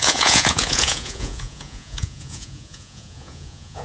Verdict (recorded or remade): remade